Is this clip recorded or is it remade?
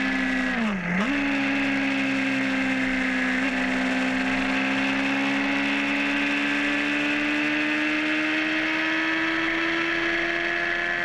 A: recorded